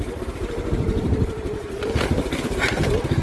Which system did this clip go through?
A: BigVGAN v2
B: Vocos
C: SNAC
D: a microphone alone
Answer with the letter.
A